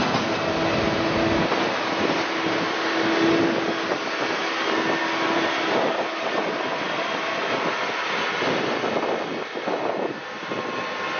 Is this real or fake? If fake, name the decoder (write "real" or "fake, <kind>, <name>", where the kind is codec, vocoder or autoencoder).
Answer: real